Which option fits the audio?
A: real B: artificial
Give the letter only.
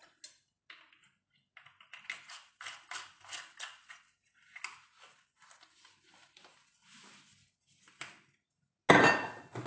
A